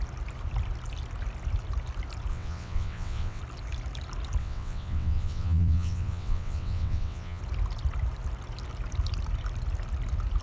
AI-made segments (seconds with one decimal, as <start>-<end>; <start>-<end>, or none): 2.3-3.4; 4.4-7.4